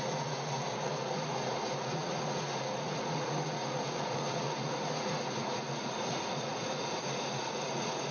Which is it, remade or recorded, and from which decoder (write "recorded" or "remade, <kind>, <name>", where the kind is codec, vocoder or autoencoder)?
remade, vocoder, Vocos